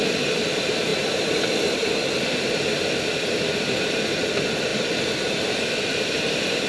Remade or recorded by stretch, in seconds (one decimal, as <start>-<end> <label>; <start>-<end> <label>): 0.0-4.7 remade; 4.7-6.3 recorded; 6.3-6.7 remade